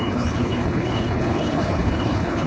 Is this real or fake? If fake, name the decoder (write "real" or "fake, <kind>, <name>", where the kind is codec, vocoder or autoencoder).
fake, codec, HILCodec